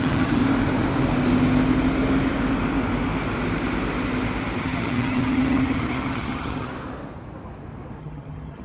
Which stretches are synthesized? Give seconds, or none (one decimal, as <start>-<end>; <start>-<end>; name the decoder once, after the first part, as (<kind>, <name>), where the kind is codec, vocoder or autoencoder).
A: 0.0-0.4 (vocoder, HiFi-GAN); 4.6-6.7; 8.0-8.6